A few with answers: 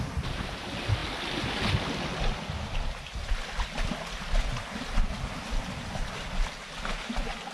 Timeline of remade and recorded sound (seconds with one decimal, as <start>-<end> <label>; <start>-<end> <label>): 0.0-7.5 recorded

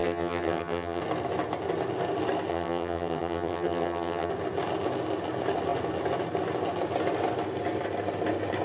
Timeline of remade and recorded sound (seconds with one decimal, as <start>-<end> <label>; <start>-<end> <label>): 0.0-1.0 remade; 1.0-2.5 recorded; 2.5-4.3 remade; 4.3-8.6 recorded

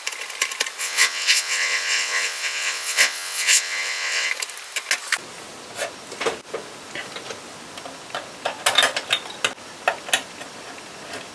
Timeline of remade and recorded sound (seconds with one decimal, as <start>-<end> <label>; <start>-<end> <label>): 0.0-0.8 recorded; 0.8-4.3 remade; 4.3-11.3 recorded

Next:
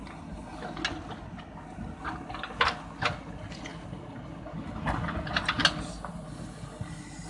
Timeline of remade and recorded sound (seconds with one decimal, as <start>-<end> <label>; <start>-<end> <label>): 0.0-7.3 recorded

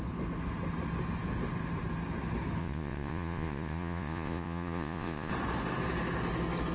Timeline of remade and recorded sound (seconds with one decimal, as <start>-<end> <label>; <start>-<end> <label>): 0.0-2.6 recorded; 2.6-5.3 remade; 5.3-6.7 recorded

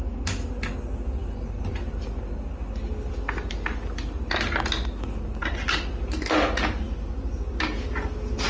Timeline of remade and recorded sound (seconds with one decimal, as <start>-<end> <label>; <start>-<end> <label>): 0.0-8.5 recorded

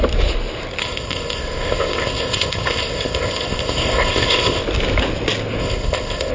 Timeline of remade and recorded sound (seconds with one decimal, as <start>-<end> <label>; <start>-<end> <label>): 0.0-0.8 recorded; 0.8-4.6 remade; 4.6-5.6 recorded; 5.6-6.3 remade

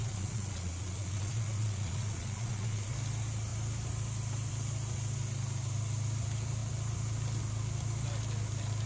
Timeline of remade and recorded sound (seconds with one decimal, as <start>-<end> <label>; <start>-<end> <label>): 0.0-2.9 remade; 2.9-8.9 recorded